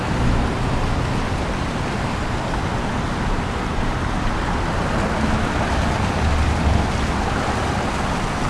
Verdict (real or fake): real